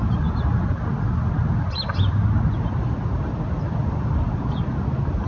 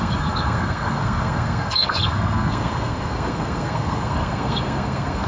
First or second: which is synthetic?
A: second